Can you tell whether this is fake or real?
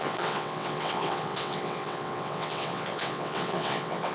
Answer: fake